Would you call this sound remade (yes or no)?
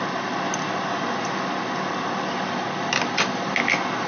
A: no